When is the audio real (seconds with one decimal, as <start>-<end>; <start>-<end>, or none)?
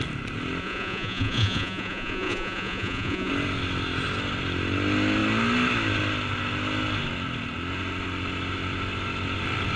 0.0-0.6; 3.3-9.8